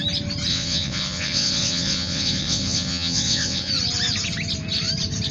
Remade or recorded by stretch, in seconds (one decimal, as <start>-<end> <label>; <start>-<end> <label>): 0.0-0.5 recorded; 0.5-3.7 remade; 3.7-5.3 recorded